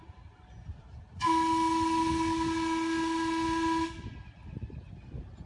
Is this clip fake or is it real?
real